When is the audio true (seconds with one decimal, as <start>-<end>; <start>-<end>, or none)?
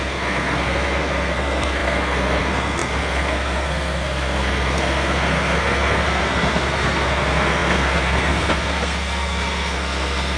none